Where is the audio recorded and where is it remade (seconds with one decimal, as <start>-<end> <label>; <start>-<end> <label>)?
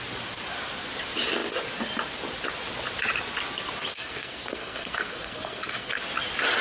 0.0-3.9 recorded; 3.9-6.0 remade; 6.0-6.6 recorded